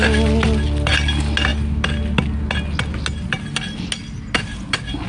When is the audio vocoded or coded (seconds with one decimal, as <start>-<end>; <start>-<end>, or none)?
none